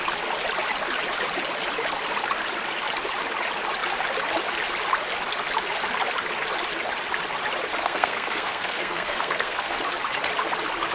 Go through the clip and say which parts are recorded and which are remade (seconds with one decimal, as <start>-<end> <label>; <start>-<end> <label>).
0.0-7.8 recorded; 7.8-9.8 remade; 9.8-10.9 recorded